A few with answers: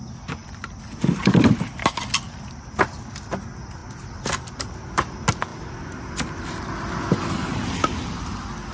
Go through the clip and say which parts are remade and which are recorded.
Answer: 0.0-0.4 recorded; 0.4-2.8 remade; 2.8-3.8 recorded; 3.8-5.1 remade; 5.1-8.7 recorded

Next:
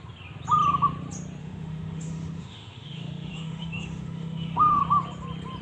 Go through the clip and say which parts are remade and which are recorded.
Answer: 0.0-1.4 recorded; 1.4-4.8 remade; 4.8-5.6 recorded

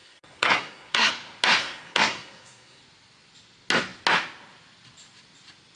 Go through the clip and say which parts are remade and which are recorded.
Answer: 0.0-1.1 remade; 1.1-1.6 recorded; 1.6-2.8 remade; 2.8-5.8 recorded

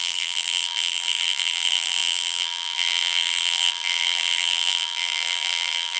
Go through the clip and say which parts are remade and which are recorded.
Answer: 0.0-6.0 remade

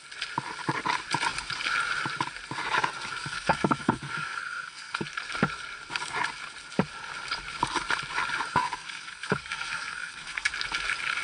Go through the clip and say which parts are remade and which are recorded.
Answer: 0.0-3.2 recorded; 3.2-5.0 remade; 5.0-8.5 recorded; 8.5-10.5 remade; 10.5-11.2 recorded